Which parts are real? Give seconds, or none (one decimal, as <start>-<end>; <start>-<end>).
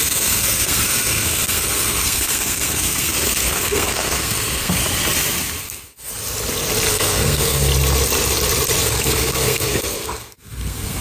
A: 4.8-5.6; 6.1-6.9; 7.7-8.8